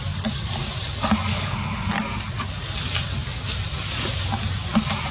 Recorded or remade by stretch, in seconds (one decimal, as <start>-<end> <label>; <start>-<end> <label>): 0.0-1.3 recorded; 1.3-1.9 remade; 1.9-5.1 recorded

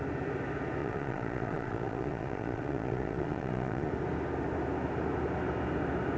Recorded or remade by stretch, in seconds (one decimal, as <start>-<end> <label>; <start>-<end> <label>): 0.0-0.8 recorded; 0.8-3.9 remade; 3.9-6.2 recorded